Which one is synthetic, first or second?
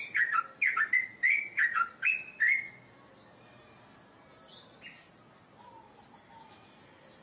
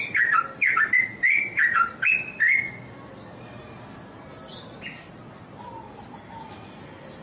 second